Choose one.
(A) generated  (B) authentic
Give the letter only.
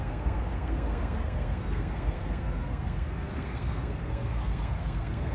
A